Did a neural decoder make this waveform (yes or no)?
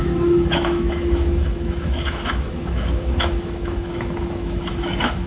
yes